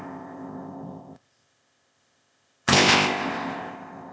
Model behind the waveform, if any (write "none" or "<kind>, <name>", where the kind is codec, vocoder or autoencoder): codec, ZipCodec